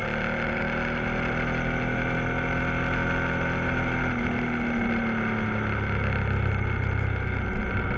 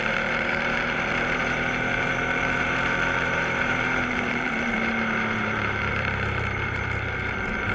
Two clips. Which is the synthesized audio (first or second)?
second